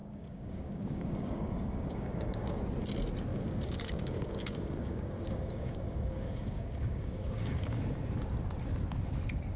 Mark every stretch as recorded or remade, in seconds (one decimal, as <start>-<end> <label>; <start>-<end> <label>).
0.0-2.6 remade; 2.6-3.3 recorded; 3.3-7.8 remade; 7.8-9.6 recorded